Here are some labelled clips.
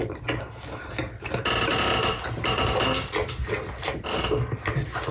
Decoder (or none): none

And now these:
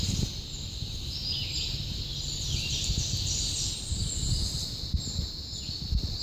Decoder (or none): none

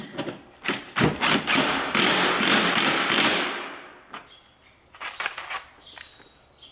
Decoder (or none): none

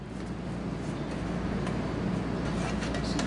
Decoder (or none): none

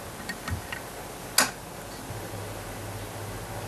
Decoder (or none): none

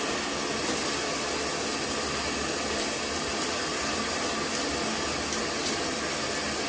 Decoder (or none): none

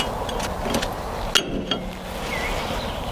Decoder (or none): none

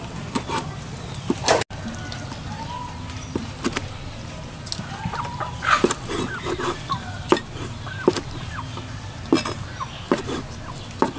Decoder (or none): none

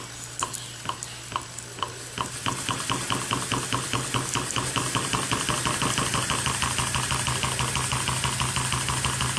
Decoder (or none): none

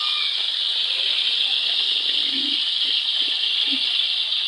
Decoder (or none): none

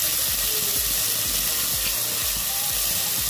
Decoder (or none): none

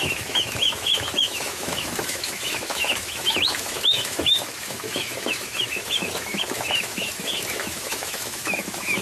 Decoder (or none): autoencoder, DAC-VAE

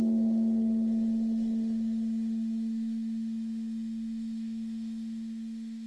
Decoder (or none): autoencoder, DAC-VAE